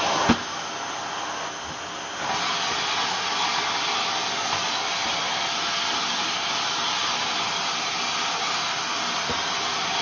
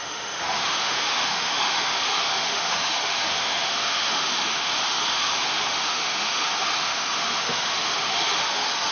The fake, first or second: second